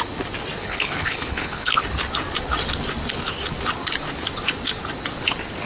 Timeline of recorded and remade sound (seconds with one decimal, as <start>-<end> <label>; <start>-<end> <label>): 0.0-0.6 recorded; 0.6-1.8 remade; 1.8-5.7 recorded